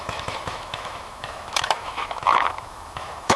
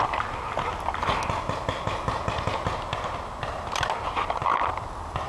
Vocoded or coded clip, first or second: first